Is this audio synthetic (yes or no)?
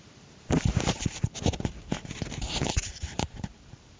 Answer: yes